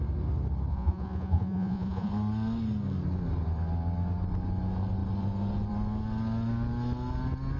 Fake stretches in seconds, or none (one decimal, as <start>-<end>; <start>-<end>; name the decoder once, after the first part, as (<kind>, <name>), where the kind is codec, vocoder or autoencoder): 0.7-2.1 (vocoder, Vocos)